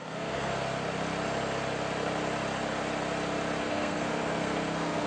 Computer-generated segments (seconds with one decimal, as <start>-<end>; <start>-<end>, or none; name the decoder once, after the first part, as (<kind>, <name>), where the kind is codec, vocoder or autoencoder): 0.0-0.5 (codec, SNAC); 3.6-5.1